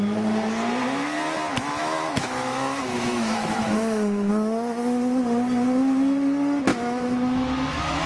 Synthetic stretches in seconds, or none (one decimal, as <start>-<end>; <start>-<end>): 1.5-4.3; 6.7-8.1